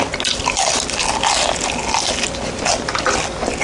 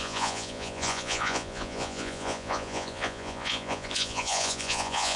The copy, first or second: second